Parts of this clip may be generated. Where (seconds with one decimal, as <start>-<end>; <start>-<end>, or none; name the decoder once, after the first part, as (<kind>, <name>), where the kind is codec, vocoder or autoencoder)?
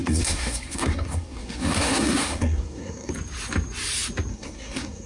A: 0.0-3.1 (codec, SNAC); 4.3-5.1